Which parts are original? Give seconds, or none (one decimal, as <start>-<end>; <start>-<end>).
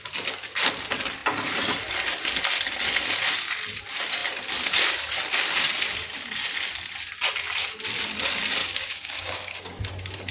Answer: 0.0-8.6; 9.8-10.3